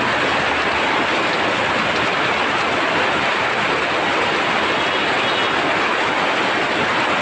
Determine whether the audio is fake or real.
real